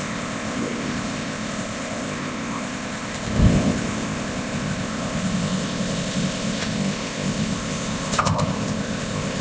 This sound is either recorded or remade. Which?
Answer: remade